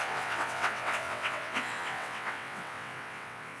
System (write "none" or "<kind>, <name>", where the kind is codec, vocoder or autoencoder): vocoder, WaveNeXt